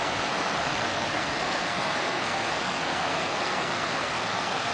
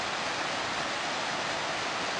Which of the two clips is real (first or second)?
second